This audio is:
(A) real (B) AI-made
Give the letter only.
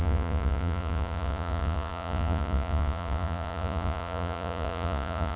B